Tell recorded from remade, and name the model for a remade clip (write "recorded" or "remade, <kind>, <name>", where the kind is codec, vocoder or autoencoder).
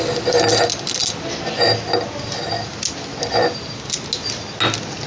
recorded